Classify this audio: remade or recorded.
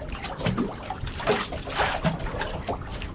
recorded